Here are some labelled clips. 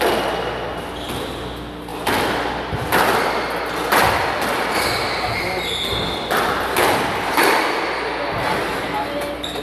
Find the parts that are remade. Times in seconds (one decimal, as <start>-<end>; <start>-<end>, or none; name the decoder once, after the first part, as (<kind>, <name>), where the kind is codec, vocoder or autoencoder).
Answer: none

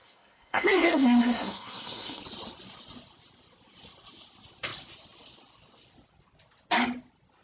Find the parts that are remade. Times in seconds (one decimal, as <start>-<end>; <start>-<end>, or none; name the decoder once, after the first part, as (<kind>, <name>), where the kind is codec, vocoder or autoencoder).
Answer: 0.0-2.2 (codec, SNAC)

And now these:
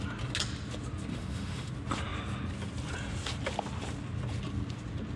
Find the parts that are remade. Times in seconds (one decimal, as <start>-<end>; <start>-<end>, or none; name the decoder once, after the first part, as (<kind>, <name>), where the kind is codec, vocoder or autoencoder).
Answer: 1.1-1.7 (autoencoder, DAC-VAE)

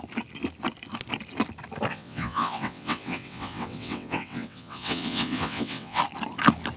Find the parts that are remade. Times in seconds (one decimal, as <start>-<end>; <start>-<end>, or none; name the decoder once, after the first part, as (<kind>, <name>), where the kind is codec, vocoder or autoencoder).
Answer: 1.9-6.0 (vocoder, WaveNeXt)

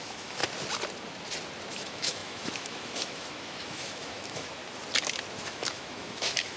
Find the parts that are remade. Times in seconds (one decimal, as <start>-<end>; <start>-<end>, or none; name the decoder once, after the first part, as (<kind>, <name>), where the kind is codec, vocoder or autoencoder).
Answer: 0.0-0.4 (autoencoder, DAC-VAE); 1.7-4.6; 5.3-6.6

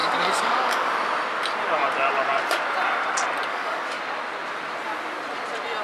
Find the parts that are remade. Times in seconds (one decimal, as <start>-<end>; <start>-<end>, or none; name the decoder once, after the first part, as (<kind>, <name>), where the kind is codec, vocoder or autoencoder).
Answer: 0.0-0.9 (codec, DAC); 3.5-4.0